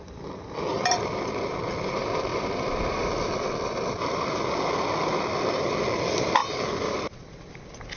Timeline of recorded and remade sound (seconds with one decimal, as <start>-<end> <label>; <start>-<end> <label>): 0.0-0.7 recorded; 0.7-1.3 remade; 1.3-2.3 recorded; 2.3-4.2 remade; 4.2-8.0 recorded